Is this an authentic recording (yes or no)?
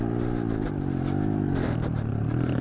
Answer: yes